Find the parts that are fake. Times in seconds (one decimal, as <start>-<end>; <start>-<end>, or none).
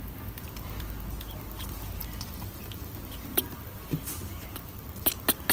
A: none